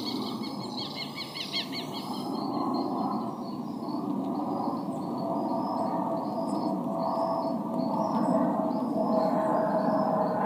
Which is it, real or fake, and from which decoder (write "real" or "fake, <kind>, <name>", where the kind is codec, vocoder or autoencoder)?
real